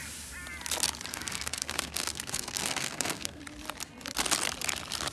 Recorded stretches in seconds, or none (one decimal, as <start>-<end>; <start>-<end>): 0.0-1.1; 3.4-5.1